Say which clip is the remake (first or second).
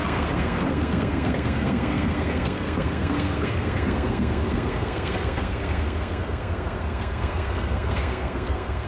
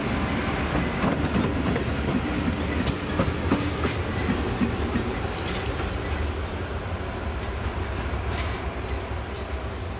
first